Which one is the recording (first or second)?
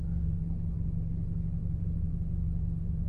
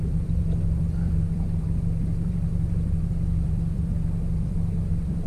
first